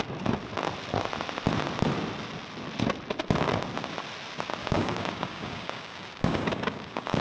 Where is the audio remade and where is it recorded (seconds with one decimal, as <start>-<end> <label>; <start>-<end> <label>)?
0.0-4.6 recorded; 4.6-7.2 remade